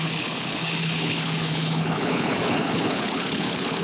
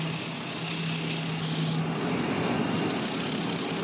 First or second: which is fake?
first